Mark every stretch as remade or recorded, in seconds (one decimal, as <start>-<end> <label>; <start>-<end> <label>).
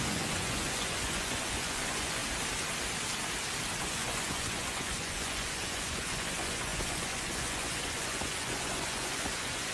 0.0-2.2 remade; 2.2-3.8 recorded; 3.8-9.7 remade